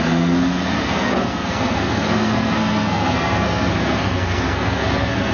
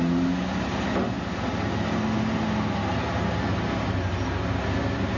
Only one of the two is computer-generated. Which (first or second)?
first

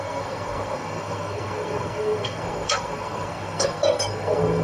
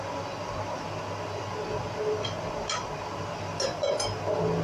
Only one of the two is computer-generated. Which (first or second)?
first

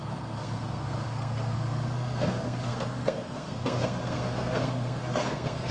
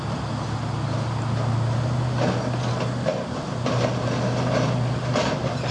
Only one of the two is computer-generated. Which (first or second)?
first